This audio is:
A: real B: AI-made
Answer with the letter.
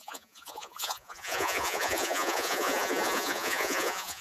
B